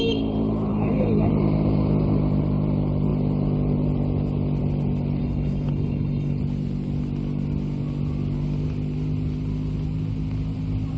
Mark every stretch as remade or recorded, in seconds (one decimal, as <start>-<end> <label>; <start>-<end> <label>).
0.0-0.7 recorded; 0.7-1.3 remade; 1.3-5.2 recorded; 5.2-6.4 remade; 6.4-11.0 recorded